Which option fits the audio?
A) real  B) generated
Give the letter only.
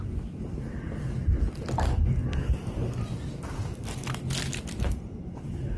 A